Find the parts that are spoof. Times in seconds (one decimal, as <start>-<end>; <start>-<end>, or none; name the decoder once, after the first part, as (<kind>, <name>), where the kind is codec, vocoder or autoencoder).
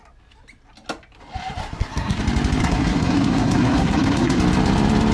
1.6-2.2 (codec, SNAC); 2.6-4.4